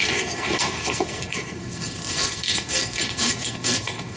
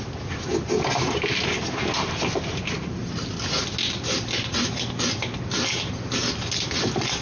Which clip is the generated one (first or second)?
first